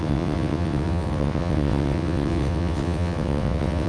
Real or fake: fake